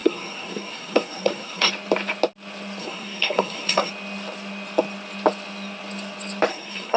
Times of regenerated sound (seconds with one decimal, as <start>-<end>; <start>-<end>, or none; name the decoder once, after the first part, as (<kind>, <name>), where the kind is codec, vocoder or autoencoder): 0.0-1.7 (codec, SNAC); 2.8-3.9; 6.5-7.0